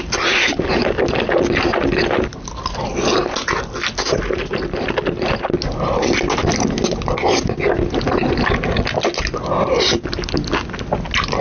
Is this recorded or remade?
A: recorded